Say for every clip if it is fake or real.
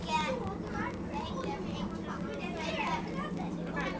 real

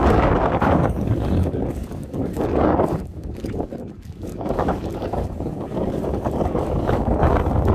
fake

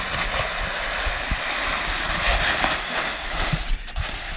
real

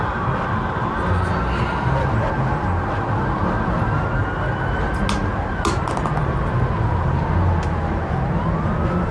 real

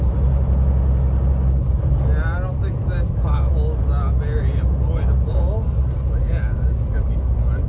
real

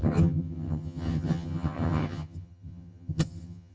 fake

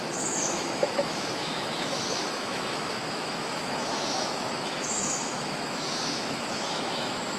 fake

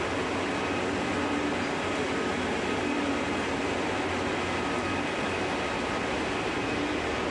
real